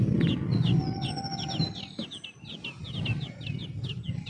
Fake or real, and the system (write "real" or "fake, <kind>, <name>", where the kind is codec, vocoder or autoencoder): real